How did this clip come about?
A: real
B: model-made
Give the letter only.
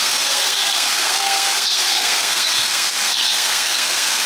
B